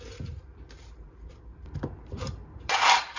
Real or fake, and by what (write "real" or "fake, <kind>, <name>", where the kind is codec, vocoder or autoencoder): fake, vocoder, BigVGAN v2